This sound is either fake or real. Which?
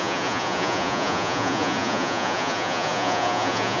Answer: fake